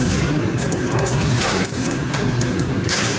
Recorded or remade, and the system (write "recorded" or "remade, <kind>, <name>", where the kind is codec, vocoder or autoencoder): remade, codec, SNAC